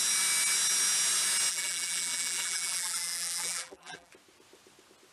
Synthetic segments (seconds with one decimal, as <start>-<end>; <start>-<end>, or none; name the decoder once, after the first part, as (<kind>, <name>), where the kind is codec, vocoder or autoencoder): 1.5-4.1 (vocoder, BigVGAN v2)